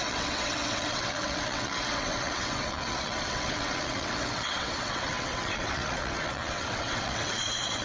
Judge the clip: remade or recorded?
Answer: remade